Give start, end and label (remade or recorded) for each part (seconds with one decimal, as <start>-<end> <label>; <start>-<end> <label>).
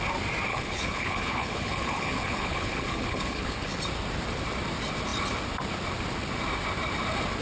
0.0-0.5 recorded; 0.5-3.8 remade; 3.8-7.4 recorded